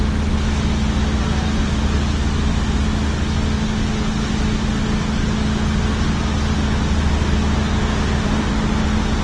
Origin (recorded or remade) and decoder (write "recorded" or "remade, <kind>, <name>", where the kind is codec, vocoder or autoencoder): recorded